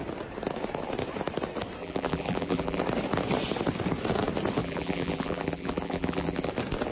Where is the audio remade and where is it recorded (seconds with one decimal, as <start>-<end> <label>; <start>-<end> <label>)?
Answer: 0.0-1.8 recorded; 1.8-2.8 remade; 2.8-4.6 recorded; 4.6-6.5 remade; 6.5-6.9 recorded